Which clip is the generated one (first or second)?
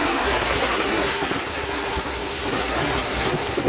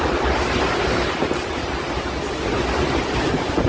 first